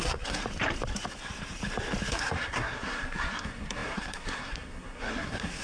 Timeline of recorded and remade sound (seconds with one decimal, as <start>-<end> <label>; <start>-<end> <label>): 0.0-0.4 remade; 0.4-2.1 recorded; 2.1-5.6 remade

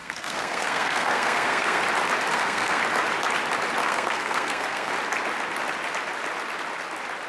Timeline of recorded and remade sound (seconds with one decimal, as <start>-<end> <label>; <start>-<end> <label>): 0.0-1.8 remade; 1.8-2.3 recorded; 2.3-2.8 remade; 2.8-3.8 recorded; 3.8-4.9 remade; 4.9-7.3 recorded

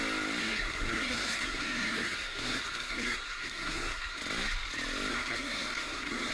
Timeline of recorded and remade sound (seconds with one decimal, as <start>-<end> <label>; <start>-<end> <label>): 0.0-0.4 recorded; 0.4-4.2 remade; 4.2-5.1 recorded; 5.1-6.3 remade

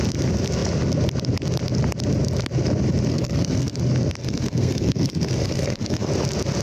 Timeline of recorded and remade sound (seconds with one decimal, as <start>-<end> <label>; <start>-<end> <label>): 0.0-3.1 recorded; 3.1-3.8 remade; 3.8-4.2 recorded; 4.2-6.1 remade; 6.1-6.6 recorded

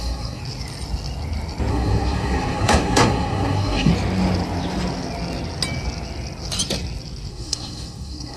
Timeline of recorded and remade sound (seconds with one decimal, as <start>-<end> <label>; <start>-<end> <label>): 0.0-0.4 remade; 0.4-1.7 recorded; 1.7-3.9 remade; 3.9-7.3 recorded; 7.3-8.4 remade

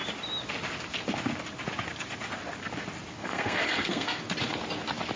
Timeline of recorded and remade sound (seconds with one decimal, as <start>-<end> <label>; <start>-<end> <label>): 0.0-3.2 recorded; 3.2-4.2 remade; 4.2-5.2 recorded